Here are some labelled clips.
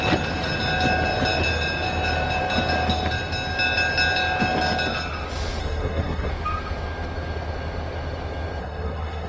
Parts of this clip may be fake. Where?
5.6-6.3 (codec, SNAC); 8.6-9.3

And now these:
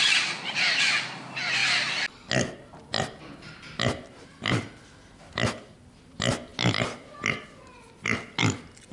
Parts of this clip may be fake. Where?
none

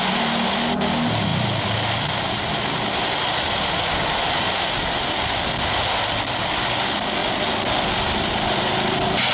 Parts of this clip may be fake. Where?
none

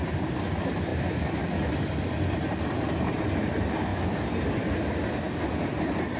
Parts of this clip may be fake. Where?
none

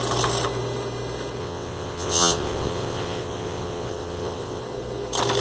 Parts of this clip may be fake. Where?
1.4-4.6 (vocoder, WaveNeXt)